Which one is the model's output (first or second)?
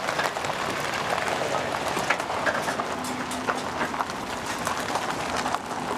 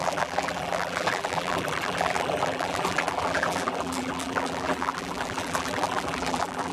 second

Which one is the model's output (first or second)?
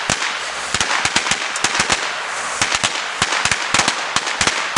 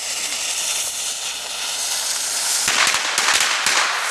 second